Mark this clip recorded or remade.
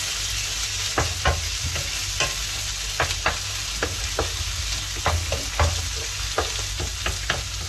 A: recorded